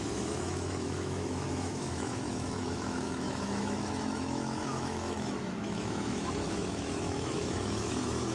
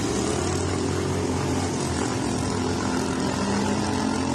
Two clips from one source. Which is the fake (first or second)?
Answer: first